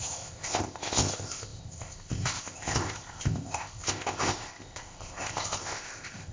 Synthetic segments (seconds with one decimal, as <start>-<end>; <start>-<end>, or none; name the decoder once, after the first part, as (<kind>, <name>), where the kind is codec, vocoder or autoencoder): 0.0-6.3 (codec, ZipCodec)